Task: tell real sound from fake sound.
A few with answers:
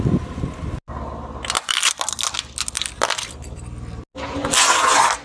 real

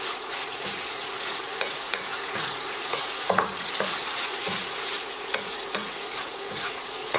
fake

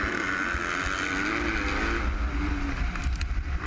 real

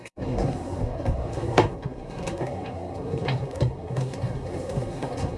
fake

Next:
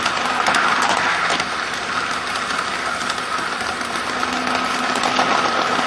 real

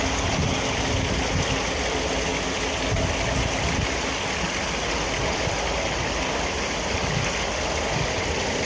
real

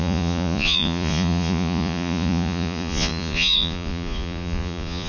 fake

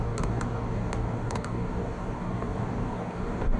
fake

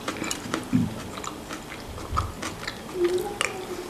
real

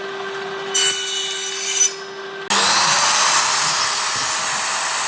real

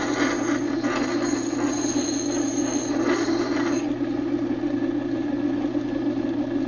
real